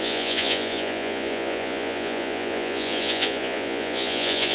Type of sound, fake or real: fake